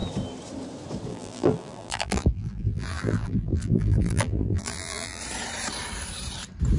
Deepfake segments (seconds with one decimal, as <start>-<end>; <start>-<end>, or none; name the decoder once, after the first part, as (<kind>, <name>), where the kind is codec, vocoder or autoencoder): 1.1-5.2 (vocoder, BigVGAN v2)